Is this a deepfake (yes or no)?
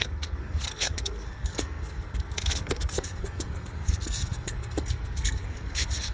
yes